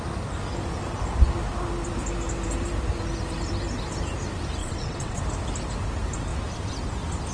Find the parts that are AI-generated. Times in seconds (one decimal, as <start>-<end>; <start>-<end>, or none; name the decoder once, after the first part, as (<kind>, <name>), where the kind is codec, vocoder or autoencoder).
4.6-5.2 (vocoder, WaveNeXt)